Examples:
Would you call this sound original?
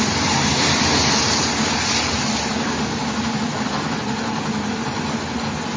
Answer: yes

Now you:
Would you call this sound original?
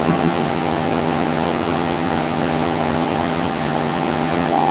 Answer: no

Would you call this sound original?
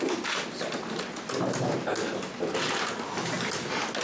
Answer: yes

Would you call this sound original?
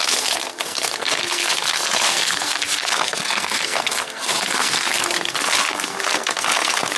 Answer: no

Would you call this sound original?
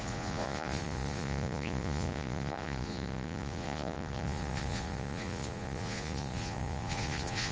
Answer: no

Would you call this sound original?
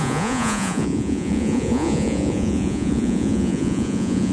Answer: no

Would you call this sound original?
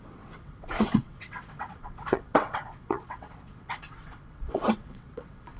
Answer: no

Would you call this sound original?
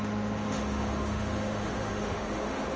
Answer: no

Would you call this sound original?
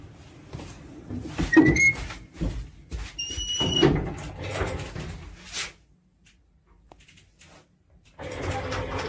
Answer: yes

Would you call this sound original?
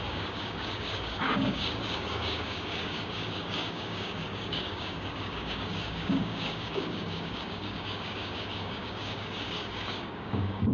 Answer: no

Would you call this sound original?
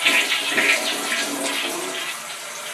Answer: yes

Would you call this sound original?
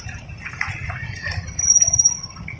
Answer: yes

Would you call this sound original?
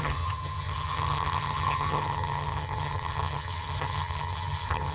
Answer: no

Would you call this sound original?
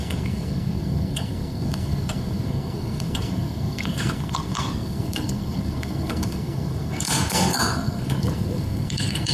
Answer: no